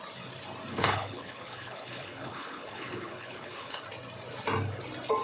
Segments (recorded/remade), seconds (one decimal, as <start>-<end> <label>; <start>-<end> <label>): 0.0-0.7 recorded; 0.7-3.8 remade; 3.8-5.2 recorded